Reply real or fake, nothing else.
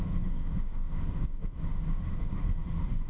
fake